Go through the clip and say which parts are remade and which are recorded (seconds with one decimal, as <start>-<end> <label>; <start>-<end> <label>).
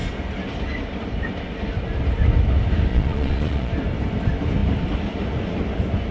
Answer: 0.0-2.9 recorded; 2.9-3.7 remade; 3.7-6.1 recorded